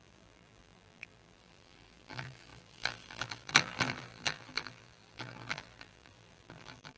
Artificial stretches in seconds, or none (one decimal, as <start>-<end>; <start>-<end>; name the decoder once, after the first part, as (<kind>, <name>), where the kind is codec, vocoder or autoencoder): 0.0-7.0 (vocoder, BigVGAN v2)